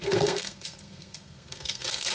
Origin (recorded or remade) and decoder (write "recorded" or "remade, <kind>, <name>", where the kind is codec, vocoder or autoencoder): remade, codec, SNAC